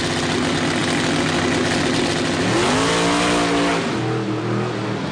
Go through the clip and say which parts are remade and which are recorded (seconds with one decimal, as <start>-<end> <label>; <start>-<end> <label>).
0.0-5.1 recorded